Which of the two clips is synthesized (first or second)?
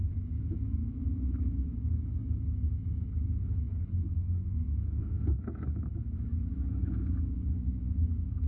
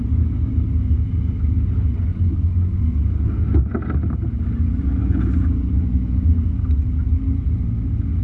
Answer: first